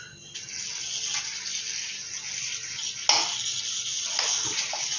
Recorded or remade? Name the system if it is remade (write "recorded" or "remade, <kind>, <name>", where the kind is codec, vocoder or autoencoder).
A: recorded